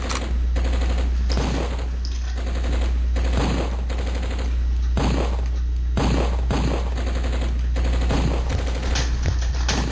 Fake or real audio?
real